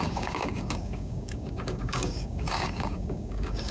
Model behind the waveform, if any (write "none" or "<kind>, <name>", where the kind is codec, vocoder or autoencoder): codec, DAC